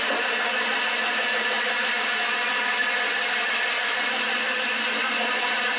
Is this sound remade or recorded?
recorded